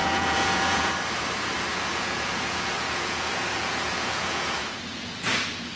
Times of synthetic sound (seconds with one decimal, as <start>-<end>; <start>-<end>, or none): 0.0-0.9; 1.7-5.2